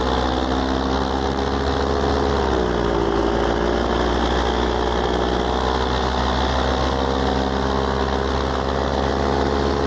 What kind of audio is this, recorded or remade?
recorded